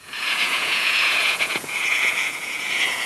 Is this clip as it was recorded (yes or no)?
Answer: no